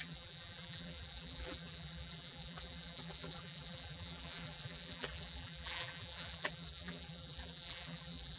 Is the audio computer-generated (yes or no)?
yes